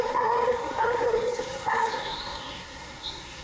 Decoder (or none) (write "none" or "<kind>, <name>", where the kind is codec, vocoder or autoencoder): codec, SNAC